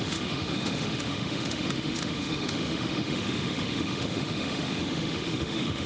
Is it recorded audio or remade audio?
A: remade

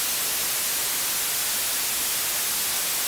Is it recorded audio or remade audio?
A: recorded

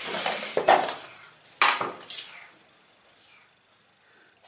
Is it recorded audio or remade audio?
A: recorded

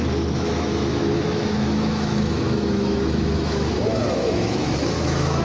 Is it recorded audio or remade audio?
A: remade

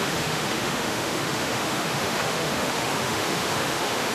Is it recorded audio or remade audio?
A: remade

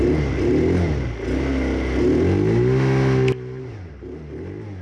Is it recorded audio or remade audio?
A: recorded